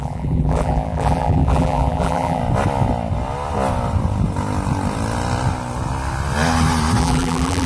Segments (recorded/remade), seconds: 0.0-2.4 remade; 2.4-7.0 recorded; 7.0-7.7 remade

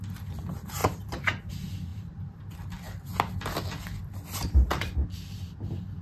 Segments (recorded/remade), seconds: 0.0-0.8 recorded; 0.8-1.5 remade; 1.5-1.9 recorded; 1.9-2.5 remade; 2.5-6.0 recorded

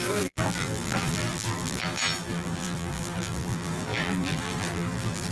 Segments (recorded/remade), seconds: 0.0-5.3 remade

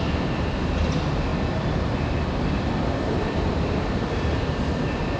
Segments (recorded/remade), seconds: 0.0-1.3 recorded; 1.3-4.4 remade; 4.4-5.2 recorded

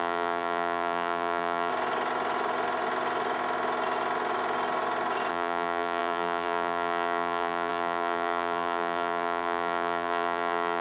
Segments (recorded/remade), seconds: 0.0-1.7 remade; 1.7-5.3 recorded; 5.3-10.8 remade

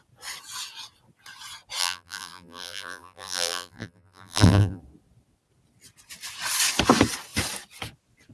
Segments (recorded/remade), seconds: 0.0-1.8 recorded; 1.8-4.8 remade; 4.8-8.3 recorded

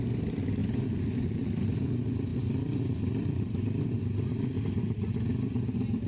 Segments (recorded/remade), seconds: 0.0-0.6 recorded; 0.6-1.2 remade; 1.2-2.3 recorded; 2.3-4.6 remade; 4.6-6.1 recorded

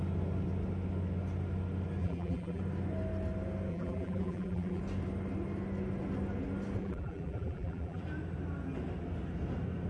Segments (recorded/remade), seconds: 0.0-2.0 recorded; 2.0-2.6 remade; 2.6-3.7 recorded; 3.7-4.8 remade; 4.8-6.8 recorded; 6.8-8.0 remade; 8.0-9.9 recorded